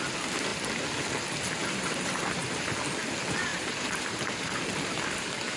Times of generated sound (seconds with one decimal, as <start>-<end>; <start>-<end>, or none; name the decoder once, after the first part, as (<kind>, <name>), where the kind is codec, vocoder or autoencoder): 1.6-2.3 (vocoder, BigVGAN v2); 3.5-4.6

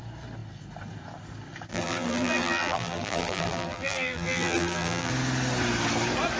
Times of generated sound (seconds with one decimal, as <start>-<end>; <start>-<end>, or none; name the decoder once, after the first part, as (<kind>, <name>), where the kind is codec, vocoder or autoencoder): 1.7-5.1 (vocoder, BigVGAN v2)

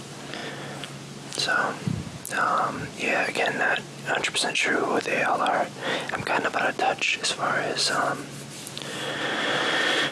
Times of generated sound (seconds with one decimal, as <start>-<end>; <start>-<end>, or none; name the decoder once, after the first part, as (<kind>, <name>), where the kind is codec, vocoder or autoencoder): 0.0-0.4 (vocoder, BigVGAN v2); 1.0-5.8; 7.1-10.1

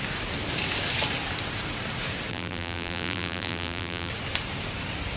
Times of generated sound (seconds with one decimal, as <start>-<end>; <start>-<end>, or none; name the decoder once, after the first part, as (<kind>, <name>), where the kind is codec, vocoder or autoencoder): 2.3-4.1 (vocoder, BigVGAN v2)

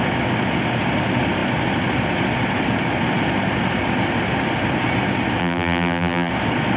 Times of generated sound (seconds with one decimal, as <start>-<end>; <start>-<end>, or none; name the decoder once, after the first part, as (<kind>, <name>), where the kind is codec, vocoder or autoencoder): 5.4-6.3 (vocoder, BigVGAN v2)

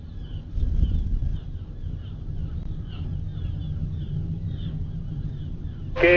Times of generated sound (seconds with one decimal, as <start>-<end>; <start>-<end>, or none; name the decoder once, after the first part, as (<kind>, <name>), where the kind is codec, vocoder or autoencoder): none